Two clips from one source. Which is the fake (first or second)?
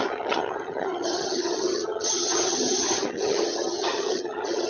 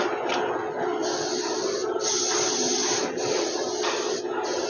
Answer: first